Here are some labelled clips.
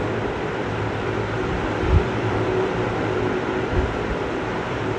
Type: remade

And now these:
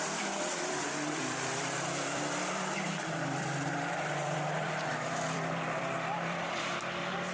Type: remade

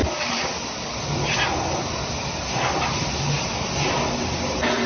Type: recorded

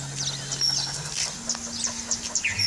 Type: recorded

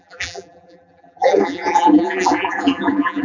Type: remade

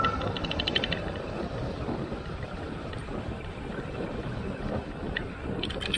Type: remade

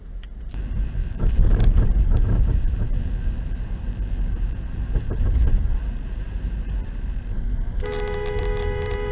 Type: remade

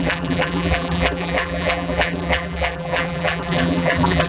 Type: remade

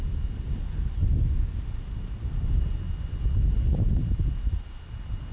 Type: recorded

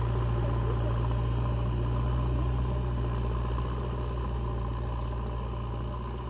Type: recorded